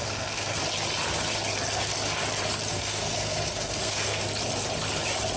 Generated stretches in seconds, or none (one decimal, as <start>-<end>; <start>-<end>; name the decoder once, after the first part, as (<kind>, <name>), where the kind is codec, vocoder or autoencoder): 0.0-0.6 (codec, SNAC); 2.7-4.2